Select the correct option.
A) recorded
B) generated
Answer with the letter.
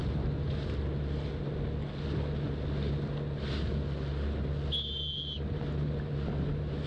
A